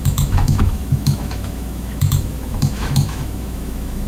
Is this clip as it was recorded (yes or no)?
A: no